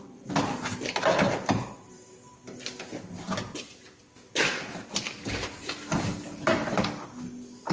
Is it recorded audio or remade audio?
recorded